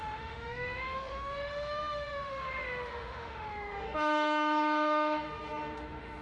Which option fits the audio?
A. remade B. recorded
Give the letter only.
A